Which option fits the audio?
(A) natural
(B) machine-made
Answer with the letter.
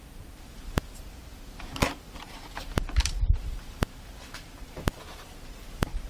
B